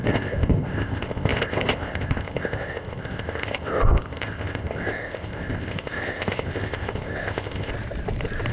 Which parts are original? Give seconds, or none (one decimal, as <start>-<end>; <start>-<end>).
7.7-8.5

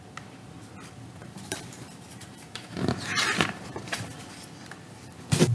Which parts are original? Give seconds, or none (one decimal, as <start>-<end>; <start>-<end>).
0.0-1.2; 4.2-5.5

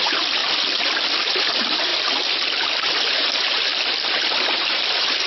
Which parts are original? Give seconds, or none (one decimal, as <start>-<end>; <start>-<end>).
0.4-1.3; 1.9-3.0; 3.7-4.5

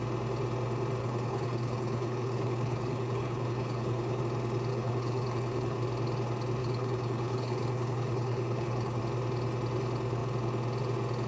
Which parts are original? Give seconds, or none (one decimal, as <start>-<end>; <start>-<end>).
0.0-1.0; 4.2-4.7; 5.8-6.6; 9.0-11.3

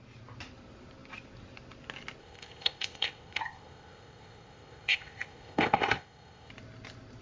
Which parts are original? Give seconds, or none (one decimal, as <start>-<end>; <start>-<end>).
0.0-2.2; 6.5-7.2

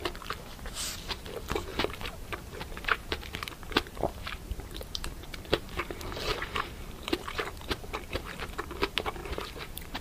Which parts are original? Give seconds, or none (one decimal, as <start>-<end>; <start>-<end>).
0.0-1.7; 5.8-6.3; 8.4-9.2

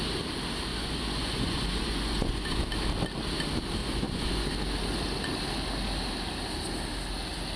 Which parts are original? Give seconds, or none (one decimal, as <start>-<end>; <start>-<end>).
0.0-0.7; 2.6-3.8; 4.5-7.6